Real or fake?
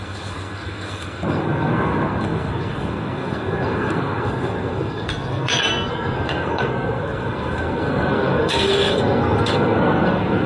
fake